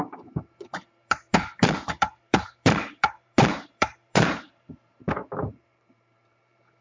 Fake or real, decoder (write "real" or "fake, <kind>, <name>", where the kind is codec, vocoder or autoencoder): fake, vocoder, BigVGAN v2